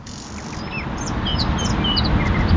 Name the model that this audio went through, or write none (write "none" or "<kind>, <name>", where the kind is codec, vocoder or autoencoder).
none